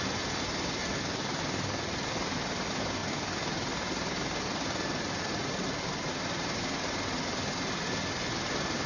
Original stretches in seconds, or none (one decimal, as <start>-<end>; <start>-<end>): 0.0-8.9

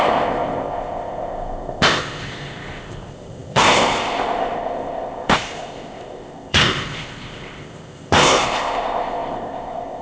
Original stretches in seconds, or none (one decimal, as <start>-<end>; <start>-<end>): none